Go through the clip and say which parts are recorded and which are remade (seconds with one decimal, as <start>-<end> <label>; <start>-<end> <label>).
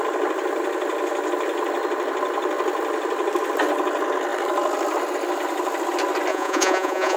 0.0-6.3 recorded; 6.3-7.2 remade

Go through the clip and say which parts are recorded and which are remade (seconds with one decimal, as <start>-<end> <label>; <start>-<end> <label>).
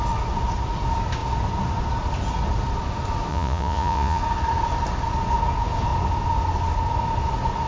0.0-3.3 recorded; 3.3-4.2 remade; 4.2-7.7 recorded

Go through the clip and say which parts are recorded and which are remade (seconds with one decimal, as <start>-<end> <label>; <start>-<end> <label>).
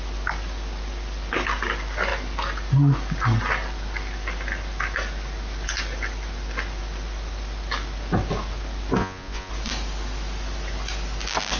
0.0-9.0 recorded; 9.0-9.5 remade; 9.5-11.6 recorded